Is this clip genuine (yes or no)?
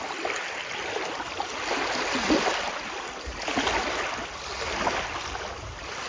yes